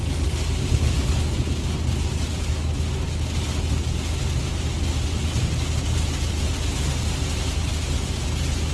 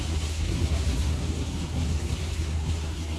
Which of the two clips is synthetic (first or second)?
second